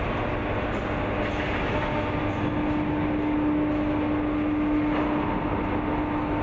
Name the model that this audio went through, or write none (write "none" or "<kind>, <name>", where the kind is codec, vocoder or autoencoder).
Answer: none